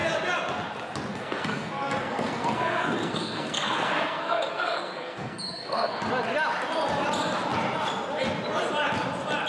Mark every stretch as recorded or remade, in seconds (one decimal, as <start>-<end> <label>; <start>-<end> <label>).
0.0-1.1 recorded; 1.1-6.0 remade; 6.0-9.5 recorded